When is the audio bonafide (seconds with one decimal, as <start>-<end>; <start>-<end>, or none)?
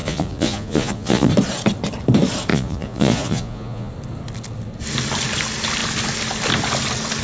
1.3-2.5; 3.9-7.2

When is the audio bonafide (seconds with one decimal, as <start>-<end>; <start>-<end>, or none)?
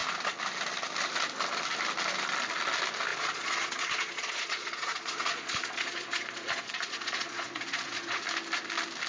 0.0-3.1; 8.2-9.1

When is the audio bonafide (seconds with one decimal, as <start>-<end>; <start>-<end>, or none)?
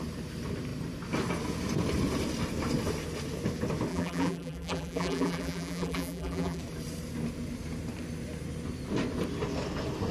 0.0-3.9; 6.6-10.1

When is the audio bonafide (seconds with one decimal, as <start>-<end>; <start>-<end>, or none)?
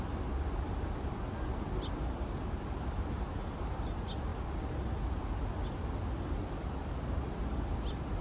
0.0-8.2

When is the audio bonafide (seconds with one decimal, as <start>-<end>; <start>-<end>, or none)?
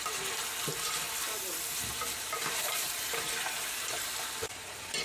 0.0-1.9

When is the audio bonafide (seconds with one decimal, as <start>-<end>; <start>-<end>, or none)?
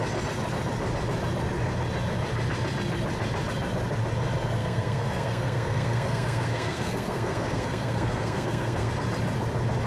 0.0-4.6; 8.9-9.9